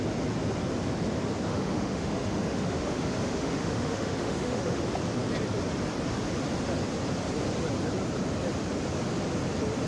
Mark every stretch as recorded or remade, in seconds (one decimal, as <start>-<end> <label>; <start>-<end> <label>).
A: 0.0-1.5 recorded; 1.5-4.8 remade; 4.8-9.9 recorded